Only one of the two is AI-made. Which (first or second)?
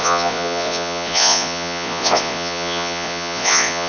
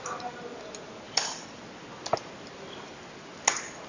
first